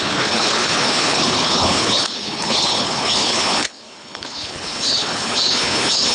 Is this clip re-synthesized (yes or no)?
yes